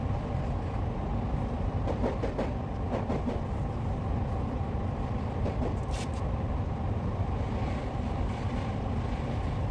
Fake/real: fake